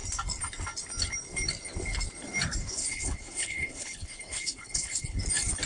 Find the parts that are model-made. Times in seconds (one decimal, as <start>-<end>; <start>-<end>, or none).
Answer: 2.6-5.2